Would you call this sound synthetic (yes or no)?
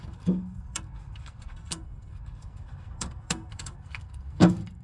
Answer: yes